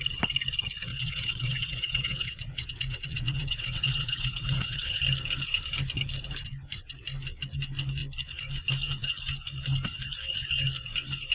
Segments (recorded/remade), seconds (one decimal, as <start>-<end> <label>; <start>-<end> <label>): 0.0-0.9 recorded; 0.9-5.0 remade; 5.0-11.3 recorded